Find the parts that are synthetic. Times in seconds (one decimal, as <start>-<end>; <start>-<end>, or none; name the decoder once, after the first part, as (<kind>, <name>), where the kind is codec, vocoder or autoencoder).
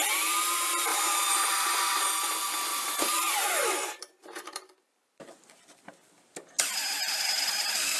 0.9-2.0 (vocoder, BigVGAN v2); 2.7-5.9